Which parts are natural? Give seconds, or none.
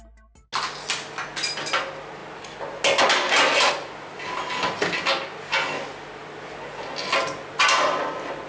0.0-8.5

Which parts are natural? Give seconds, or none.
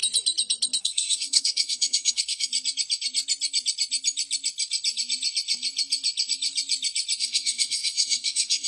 0.0-0.8; 2.5-7.2